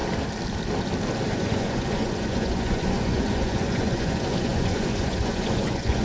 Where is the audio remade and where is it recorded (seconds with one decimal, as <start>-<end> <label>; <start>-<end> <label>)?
0.0-1.3 recorded; 1.3-6.0 remade